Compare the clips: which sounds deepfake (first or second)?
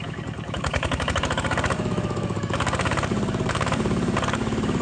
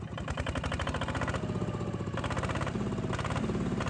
first